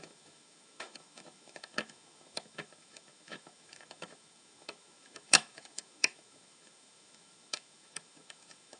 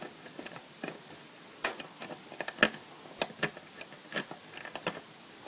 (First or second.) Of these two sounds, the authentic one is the second